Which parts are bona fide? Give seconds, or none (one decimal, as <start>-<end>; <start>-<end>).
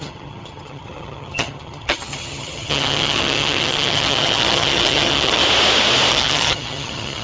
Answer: 5.4-6.1